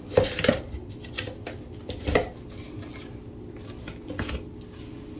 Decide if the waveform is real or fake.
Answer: real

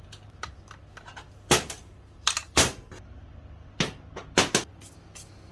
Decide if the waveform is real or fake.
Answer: real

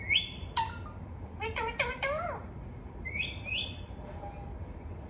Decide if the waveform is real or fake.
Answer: real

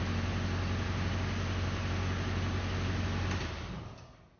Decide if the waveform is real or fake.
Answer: real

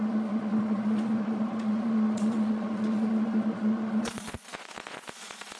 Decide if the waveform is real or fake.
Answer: fake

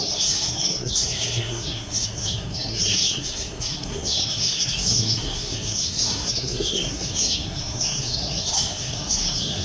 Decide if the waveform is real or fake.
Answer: fake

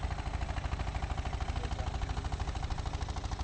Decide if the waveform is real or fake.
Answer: real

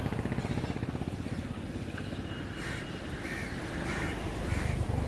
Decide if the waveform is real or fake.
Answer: real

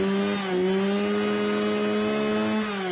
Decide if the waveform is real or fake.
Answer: real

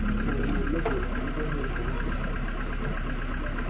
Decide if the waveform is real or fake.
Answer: real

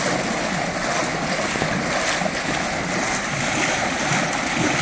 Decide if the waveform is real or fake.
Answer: real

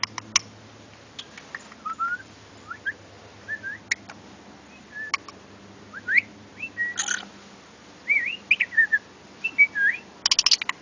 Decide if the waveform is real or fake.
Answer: real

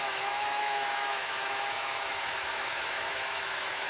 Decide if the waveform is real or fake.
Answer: fake